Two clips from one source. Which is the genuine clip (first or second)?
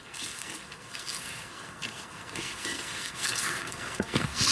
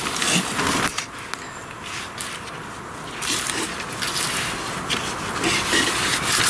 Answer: second